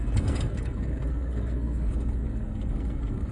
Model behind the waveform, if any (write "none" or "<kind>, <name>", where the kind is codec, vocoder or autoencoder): codec, SNAC